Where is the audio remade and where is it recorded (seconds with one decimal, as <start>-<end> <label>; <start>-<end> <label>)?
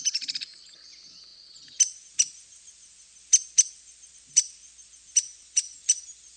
0.0-6.4 recorded